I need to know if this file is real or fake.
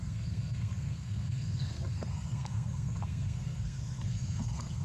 fake